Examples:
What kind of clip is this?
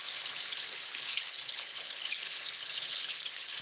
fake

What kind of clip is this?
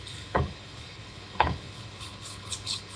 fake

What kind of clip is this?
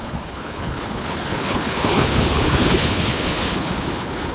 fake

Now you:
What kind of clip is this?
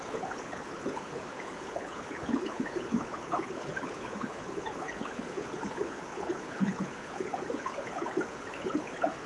fake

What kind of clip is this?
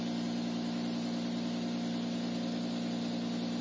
real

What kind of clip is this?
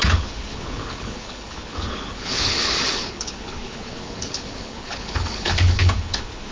fake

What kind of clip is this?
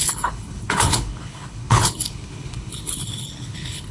fake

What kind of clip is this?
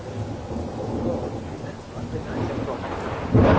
real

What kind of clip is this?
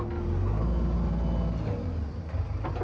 real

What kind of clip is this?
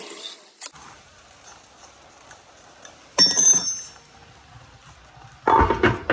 real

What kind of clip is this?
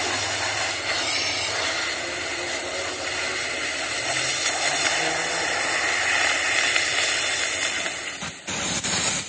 real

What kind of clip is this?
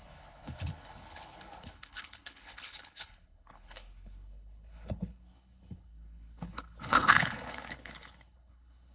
fake